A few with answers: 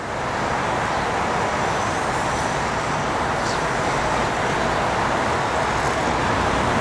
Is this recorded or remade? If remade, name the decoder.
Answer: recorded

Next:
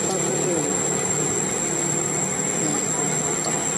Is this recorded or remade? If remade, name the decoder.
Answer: recorded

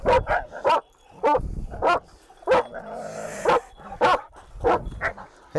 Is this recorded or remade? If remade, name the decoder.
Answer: recorded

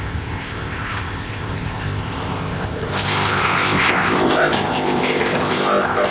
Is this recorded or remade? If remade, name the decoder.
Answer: remade, codec, ZipCodec